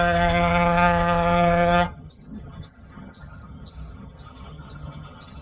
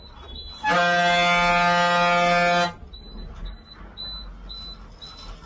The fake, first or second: first